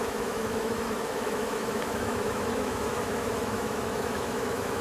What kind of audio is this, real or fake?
fake